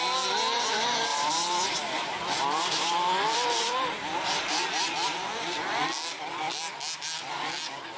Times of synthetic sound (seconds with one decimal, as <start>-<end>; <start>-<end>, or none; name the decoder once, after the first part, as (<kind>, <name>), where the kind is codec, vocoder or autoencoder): 1.1-5.3 (vocoder, BigVGAN v2)